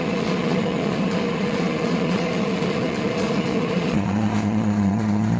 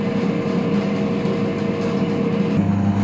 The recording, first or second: second